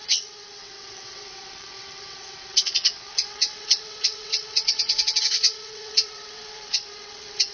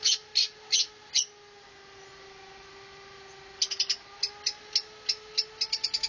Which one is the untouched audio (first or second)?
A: second